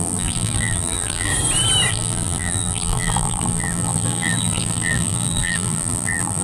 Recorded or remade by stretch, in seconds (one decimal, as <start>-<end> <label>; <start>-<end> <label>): 0.0-1.3 remade; 1.3-1.9 recorded; 1.9-6.4 remade